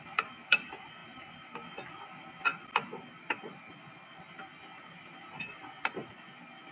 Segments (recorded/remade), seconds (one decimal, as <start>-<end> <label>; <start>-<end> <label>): 0.0-6.7 recorded